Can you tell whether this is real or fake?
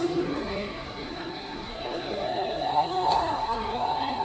fake